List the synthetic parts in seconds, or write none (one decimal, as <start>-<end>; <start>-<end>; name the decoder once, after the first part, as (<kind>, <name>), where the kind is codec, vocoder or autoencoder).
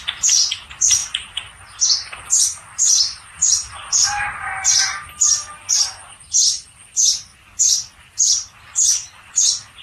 none